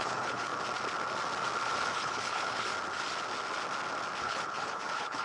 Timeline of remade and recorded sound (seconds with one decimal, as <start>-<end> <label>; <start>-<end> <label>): 0.0-0.5 remade; 0.5-1.9 recorded; 1.9-2.7 remade; 2.7-4.2 recorded; 4.2-5.2 remade